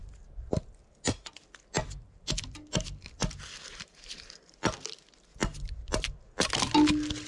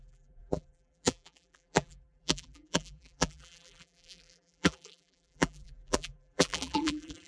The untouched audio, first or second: first